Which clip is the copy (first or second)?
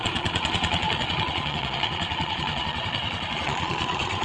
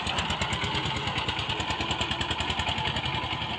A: first